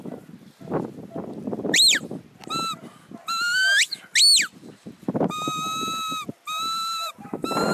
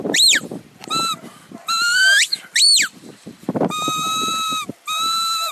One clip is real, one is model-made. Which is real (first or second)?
first